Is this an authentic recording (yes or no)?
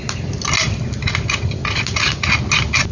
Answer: yes